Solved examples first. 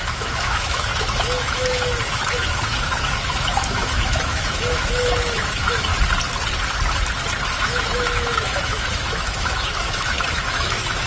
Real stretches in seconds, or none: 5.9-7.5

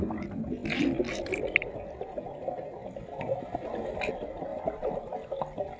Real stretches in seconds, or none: 0.0-5.8

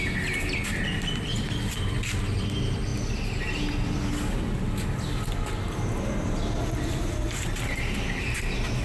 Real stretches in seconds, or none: 0.0-8.8

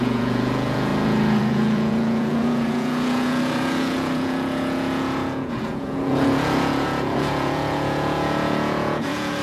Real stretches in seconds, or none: none

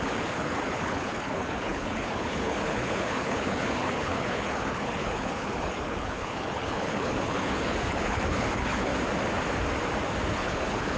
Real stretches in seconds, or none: 8.9-10.3